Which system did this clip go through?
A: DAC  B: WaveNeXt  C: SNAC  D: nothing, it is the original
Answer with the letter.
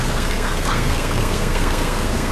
C